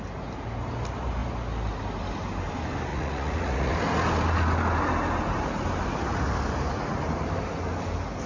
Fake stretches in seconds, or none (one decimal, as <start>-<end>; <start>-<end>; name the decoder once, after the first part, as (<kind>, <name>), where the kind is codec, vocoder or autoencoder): 2.9-3.7 (vocoder, Vocos)